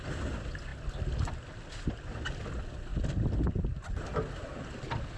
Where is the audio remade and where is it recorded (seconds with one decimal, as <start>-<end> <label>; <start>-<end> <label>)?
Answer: 0.0-5.2 recorded